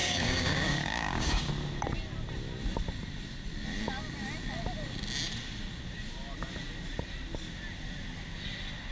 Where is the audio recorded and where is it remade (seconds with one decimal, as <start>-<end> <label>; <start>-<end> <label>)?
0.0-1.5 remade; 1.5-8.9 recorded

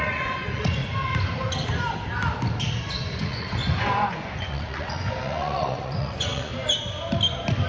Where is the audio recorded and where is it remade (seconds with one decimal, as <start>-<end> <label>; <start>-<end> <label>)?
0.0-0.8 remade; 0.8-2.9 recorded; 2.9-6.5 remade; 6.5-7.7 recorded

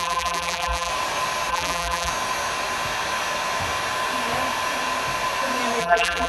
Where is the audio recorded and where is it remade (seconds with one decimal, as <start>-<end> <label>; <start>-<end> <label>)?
0.0-0.9 remade; 0.9-1.5 recorded; 1.5-2.1 remade; 2.1-5.8 recorded; 5.8-6.3 remade

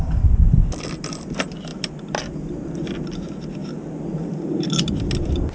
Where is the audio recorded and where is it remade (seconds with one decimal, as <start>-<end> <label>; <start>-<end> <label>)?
0.0-5.5 recorded

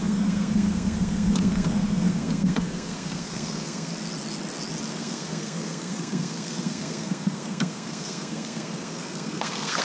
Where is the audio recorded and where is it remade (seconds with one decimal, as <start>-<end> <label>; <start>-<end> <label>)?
0.0-3.9 remade; 3.9-4.9 recorded; 4.9-9.8 remade